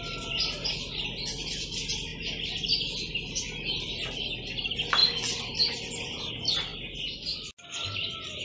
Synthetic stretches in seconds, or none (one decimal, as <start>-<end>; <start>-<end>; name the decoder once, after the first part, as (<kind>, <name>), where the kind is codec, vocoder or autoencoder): none